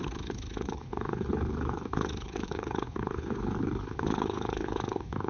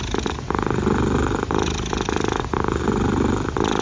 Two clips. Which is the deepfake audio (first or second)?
first